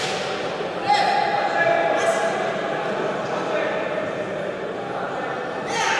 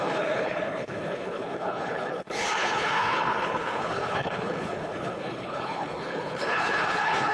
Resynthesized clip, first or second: second